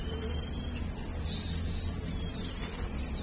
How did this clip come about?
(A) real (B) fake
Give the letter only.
A